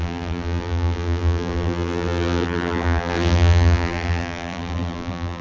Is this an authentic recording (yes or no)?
no